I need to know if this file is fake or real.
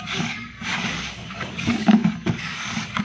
fake